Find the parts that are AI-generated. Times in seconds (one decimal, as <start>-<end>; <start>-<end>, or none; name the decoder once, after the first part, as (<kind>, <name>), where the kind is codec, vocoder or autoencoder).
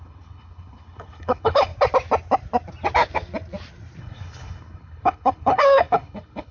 0.0-1.7 (codec, HILCodec); 4.0-6.5